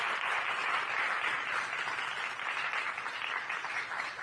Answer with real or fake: real